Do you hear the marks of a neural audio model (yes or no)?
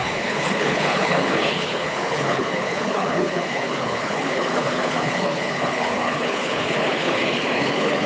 yes